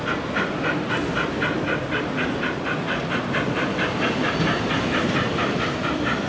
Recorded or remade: recorded